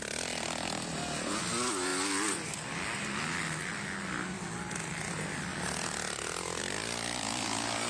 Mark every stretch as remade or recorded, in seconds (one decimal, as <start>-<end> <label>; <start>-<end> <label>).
0.0-7.9 recorded